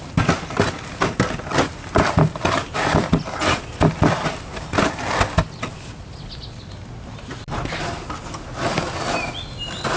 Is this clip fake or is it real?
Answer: real